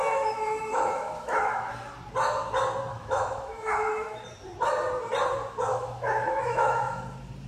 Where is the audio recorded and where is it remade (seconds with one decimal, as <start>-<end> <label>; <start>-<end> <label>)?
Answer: 0.0-1.7 remade; 1.7-2.9 recorded; 2.9-4.2 remade; 4.2-5.7 recorded; 5.7-7.0 remade; 7.0-7.5 recorded